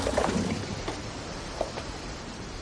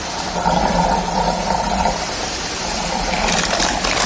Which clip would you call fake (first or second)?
first